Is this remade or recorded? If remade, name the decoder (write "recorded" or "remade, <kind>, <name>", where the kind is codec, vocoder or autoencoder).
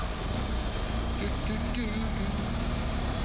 recorded